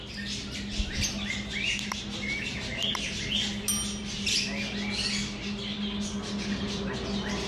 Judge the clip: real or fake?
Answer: real